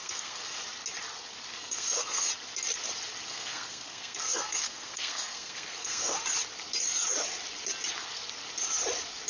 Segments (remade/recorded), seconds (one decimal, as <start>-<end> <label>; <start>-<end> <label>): 0.0-0.6 remade; 0.6-1.5 recorded; 1.5-2.3 remade; 2.3-3.3 recorded; 3.3-6.2 remade; 6.2-9.3 recorded